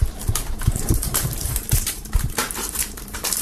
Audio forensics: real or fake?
fake